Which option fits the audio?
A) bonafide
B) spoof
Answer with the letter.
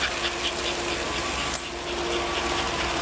A